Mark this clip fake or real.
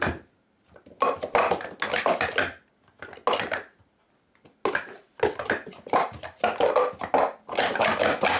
real